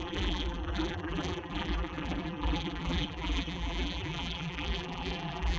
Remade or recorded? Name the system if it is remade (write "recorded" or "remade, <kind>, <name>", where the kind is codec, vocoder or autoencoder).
remade, vocoder, BigVGAN v2